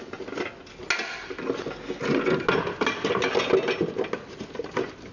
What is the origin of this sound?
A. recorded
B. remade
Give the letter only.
A